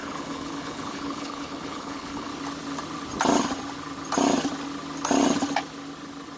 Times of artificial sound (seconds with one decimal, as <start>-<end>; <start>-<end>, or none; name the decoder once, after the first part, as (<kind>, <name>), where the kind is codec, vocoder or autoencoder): 0.0-2.3 (codec, HILCodec)